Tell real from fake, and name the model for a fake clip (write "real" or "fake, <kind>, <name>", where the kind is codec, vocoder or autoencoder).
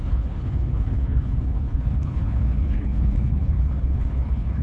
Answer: fake, codec, HILCodec